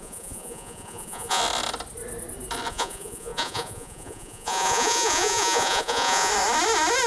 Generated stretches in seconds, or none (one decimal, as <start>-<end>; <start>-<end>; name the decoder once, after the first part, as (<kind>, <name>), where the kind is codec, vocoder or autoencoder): 0.0-1.4 (vocoder, Vocos); 2.7-6.3